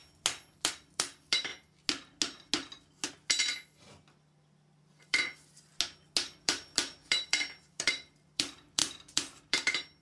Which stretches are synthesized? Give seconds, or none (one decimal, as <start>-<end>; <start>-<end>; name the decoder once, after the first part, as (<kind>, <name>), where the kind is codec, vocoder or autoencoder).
0.7-1.5 (vocoder, BigVGAN v2); 4.8-5.7; 6.4-10.0